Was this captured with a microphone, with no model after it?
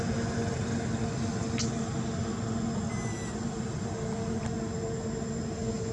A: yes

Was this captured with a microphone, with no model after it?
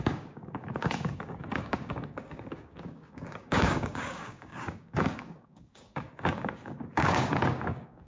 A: no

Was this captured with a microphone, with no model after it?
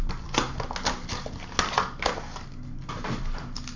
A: yes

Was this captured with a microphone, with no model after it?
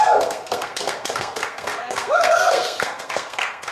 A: no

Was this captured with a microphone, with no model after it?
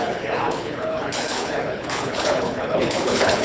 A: no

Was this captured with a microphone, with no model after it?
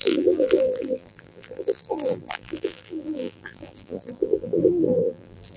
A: no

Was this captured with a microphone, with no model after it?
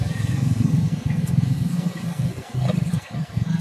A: no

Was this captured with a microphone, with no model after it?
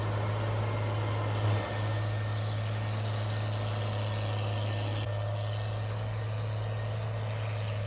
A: yes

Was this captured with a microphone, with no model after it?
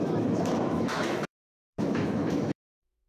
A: no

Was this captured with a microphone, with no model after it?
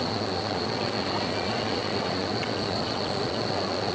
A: no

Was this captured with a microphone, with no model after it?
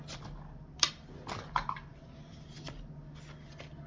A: yes